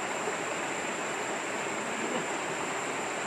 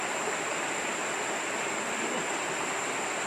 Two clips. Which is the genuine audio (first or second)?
second